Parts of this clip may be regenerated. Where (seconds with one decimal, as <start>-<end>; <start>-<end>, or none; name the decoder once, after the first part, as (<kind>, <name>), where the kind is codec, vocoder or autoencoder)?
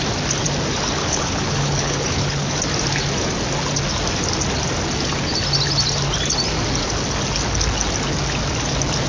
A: 1.0-2.6 (codec, HILCodec)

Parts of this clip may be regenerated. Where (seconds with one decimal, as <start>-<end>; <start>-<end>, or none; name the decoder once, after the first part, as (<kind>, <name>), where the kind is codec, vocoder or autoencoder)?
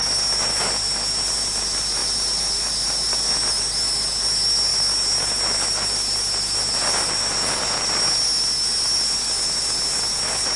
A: none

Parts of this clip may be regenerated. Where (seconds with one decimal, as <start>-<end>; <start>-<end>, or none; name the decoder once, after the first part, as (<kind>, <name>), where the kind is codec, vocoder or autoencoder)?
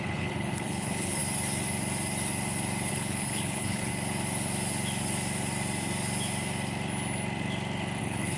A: 0.0-1.2 (codec, HILCodec); 2.9-3.9; 8.0-8.4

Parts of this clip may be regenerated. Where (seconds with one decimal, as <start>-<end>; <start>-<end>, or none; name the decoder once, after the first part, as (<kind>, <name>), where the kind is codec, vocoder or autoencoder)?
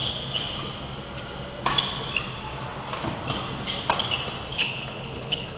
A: 4.5-5.6 (codec, HILCodec)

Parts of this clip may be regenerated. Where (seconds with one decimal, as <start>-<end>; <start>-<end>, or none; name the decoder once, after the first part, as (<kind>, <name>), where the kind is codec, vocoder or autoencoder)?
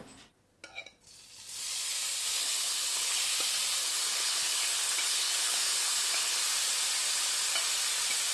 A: 2.4-3.2 (codec, HILCodec); 3.8-6.4